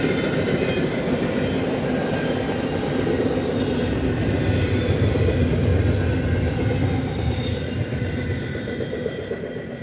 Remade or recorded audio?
recorded